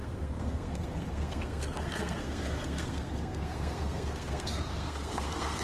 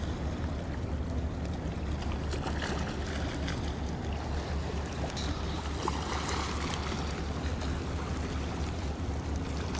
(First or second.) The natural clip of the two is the second